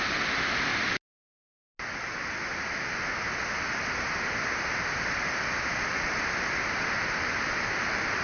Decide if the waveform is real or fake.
real